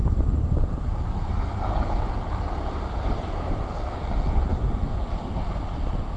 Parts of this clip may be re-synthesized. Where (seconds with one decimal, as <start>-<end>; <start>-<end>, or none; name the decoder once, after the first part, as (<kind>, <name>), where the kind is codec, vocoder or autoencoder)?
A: 0.0-3.6 (vocoder, BigVGAN v2)